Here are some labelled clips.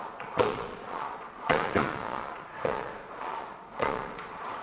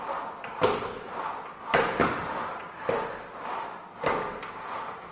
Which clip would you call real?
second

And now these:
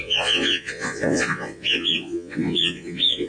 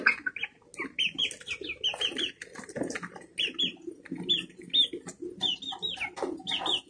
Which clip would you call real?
second